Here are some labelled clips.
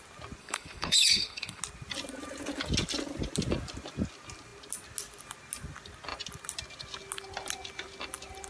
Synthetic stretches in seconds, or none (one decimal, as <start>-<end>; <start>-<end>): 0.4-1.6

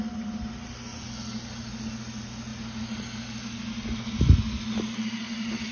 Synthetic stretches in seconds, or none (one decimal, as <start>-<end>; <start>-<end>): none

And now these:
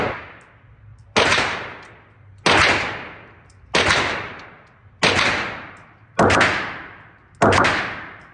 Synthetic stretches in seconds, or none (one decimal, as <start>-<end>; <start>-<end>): none

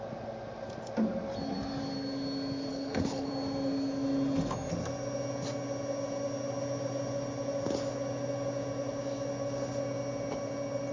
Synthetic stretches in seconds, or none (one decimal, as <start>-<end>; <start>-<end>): 2.7-3.3

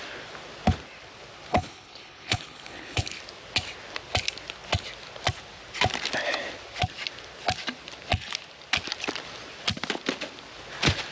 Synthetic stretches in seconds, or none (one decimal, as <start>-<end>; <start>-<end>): 1.5-3.2

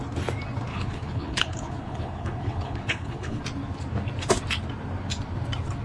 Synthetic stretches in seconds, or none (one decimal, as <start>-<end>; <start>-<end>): 0.7-3.4